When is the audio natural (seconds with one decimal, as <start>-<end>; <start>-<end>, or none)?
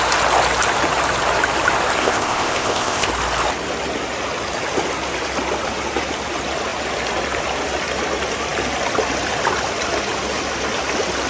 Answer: 0.0-2.0; 3.1-11.3